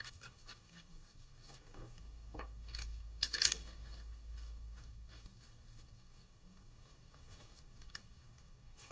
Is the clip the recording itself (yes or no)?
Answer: no